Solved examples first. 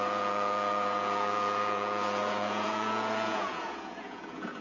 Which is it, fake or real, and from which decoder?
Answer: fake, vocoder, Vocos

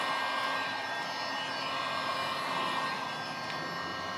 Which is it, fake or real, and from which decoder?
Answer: real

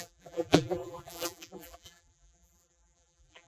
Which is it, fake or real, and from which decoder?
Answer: fake, vocoder, BigVGAN v2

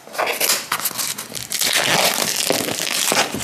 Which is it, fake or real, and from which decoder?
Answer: real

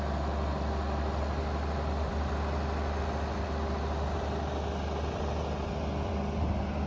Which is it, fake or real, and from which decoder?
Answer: real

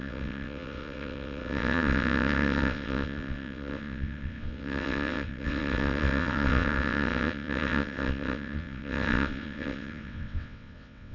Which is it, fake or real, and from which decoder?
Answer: fake, vocoder, WaveNeXt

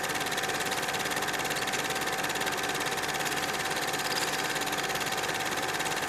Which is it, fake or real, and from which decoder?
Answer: real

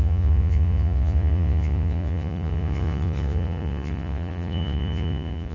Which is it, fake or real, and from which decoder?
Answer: fake, vocoder, Vocos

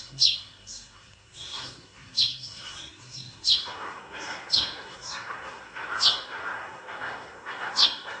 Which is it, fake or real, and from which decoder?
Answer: fake, codec, SNAC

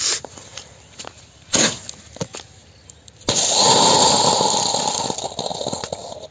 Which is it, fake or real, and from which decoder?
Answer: real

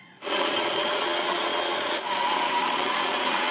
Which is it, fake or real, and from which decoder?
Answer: fake, vocoder, Vocos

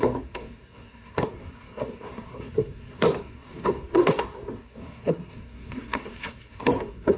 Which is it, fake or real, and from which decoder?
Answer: fake, codec, SNAC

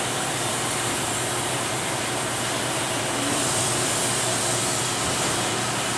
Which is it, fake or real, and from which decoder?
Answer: fake, vocoder, BigVGAN v2